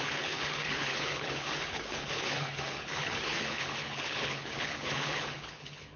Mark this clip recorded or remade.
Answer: remade